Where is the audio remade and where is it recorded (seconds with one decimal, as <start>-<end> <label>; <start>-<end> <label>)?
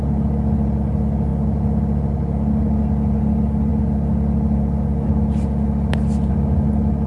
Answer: 0.0-1.3 recorded; 1.3-2.0 remade; 2.0-7.1 recorded